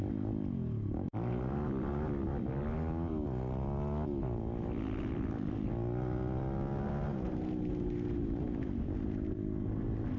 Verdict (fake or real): real